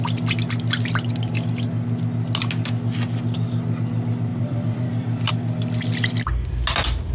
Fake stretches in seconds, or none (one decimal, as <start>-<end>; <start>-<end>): 4.3-5.3